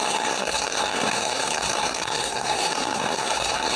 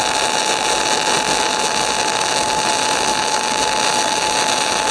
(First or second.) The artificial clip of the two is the first